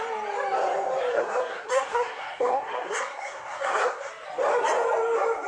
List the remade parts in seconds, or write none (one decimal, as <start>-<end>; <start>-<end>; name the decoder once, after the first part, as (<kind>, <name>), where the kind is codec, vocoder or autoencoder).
1.1-4.1 (codec, SNAC)